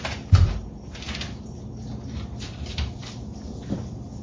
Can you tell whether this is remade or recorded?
remade